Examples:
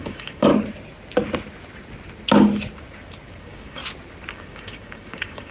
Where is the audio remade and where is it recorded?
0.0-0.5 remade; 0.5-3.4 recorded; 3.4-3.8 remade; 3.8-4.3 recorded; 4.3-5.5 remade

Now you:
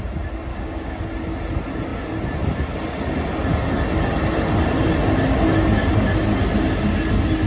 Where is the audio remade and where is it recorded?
0.0-0.5 recorded; 0.5-1.0 remade; 1.0-7.5 recorded

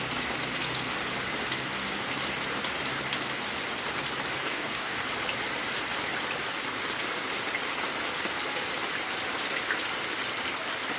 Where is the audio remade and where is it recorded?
0.0-4.4 recorded; 4.4-5.0 remade; 5.0-11.0 recorded

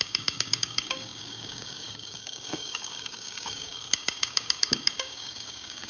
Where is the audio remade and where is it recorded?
0.0-5.9 remade

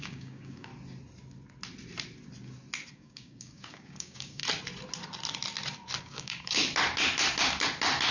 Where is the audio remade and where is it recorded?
0.0-0.7 remade; 0.7-2.9 recorded; 2.9-4.4 remade; 4.4-6.0 recorded; 6.0-6.6 remade; 6.6-8.1 recorded

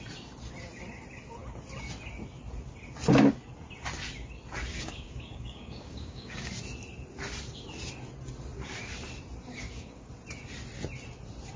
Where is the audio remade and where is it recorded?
0.0-4.7 recorded; 4.7-6.5 remade; 6.5-9.5 recorded; 9.5-10.1 remade; 10.1-11.6 recorded